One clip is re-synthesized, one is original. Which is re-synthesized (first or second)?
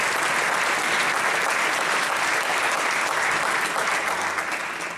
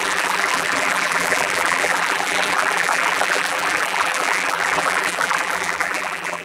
second